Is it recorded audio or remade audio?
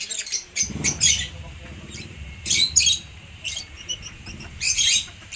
remade